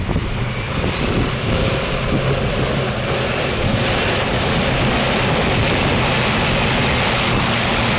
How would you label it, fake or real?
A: real